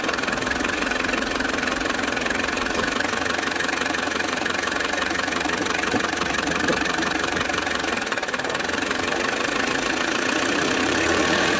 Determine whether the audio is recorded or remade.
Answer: remade